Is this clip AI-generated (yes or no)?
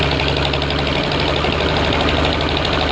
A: no